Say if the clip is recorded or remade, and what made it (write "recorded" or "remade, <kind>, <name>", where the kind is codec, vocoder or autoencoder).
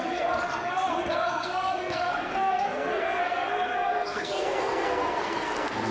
remade, codec, SNAC